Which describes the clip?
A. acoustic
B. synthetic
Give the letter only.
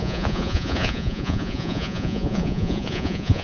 B